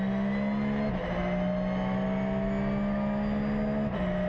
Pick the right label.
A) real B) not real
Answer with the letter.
A